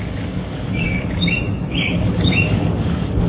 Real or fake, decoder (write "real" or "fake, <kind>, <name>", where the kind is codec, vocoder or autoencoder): fake, codec, DAC